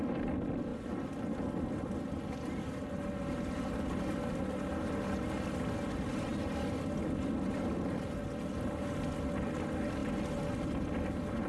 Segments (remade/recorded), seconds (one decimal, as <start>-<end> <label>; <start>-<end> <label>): 0.0-11.5 recorded